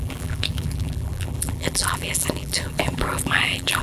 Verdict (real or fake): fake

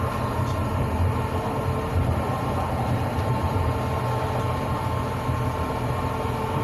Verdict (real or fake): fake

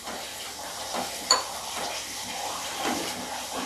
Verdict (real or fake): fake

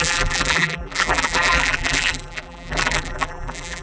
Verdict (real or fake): fake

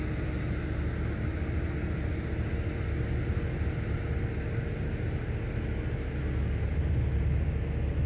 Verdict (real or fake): real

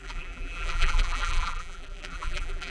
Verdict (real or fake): fake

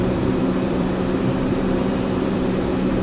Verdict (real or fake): fake